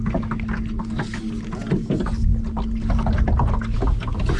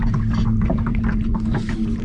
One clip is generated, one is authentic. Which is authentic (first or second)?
first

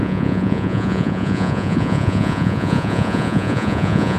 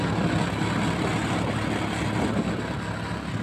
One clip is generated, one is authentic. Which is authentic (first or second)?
second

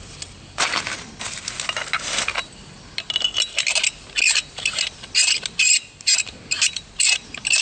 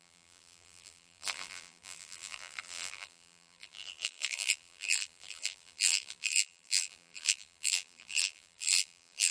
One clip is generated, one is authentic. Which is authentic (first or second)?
first